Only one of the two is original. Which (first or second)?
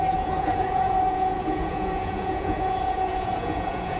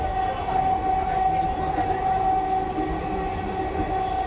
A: second